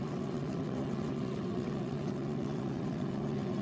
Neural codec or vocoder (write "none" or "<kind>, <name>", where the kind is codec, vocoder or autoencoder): vocoder, WaveNeXt